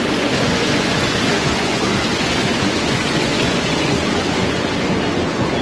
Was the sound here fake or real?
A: fake